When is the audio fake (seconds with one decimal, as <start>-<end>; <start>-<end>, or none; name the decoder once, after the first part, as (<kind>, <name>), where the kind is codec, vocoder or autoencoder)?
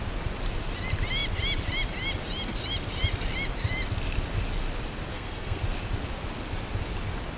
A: 5.1-5.6 (codec, SNAC)